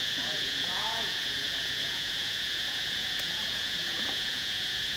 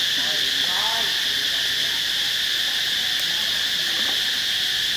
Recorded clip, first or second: second